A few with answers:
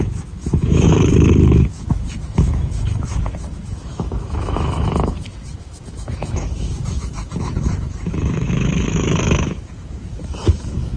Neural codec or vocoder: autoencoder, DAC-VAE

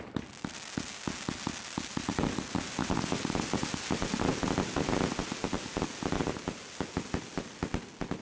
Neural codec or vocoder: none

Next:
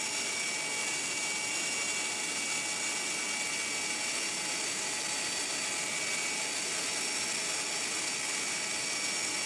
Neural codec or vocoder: none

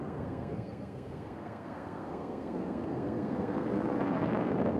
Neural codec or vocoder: codec, SNAC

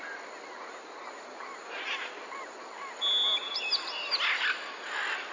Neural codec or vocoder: none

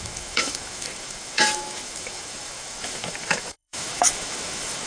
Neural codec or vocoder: autoencoder, DAC-VAE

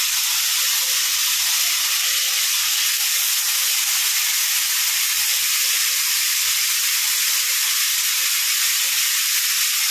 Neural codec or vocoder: none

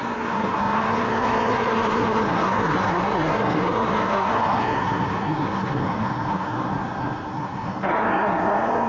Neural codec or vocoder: codec, SNAC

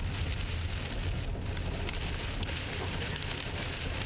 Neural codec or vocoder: none